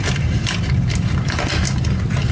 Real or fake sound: real